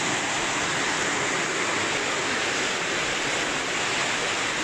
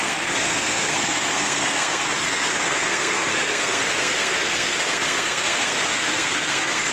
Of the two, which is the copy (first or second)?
second